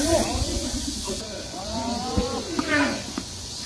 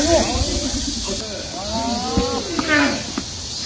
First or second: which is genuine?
second